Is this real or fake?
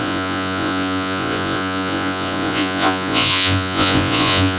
fake